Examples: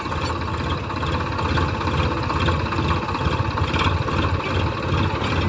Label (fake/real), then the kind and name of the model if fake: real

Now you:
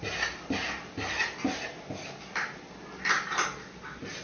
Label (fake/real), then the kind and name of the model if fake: real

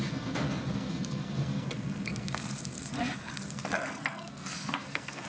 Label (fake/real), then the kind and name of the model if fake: fake, codec, SNAC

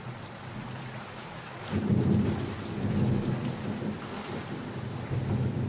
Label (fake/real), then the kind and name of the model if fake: real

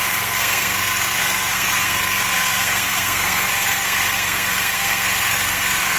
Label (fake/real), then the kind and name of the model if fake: fake, codec, SNAC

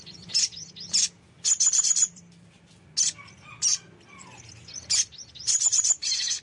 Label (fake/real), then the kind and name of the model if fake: real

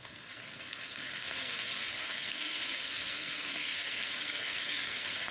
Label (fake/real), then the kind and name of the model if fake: fake, codec, SNAC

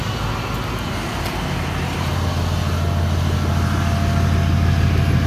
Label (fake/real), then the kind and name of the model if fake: real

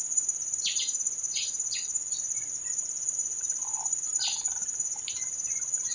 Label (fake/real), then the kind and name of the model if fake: real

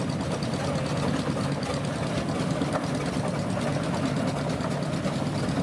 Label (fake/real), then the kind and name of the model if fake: real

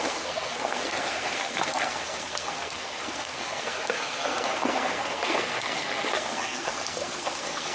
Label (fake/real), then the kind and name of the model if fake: fake, codec, SNAC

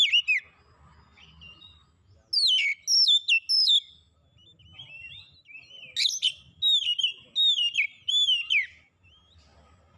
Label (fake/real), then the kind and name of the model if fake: real